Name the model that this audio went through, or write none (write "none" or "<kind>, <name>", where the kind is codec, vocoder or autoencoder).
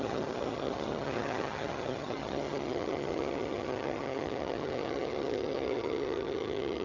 vocoder, HiFi-GAN